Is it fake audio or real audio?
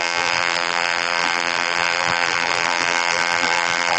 fake